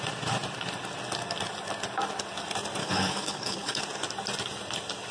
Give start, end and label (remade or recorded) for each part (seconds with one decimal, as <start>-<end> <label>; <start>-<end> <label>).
0.0-2.8 recorded; 2.8-3.8 remade; 3.8-5.1 recorded